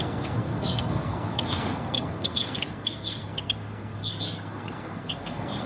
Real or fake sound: fake